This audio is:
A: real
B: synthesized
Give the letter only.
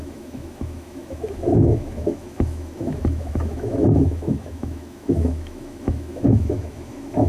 B